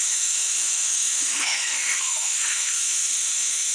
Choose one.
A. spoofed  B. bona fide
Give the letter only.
A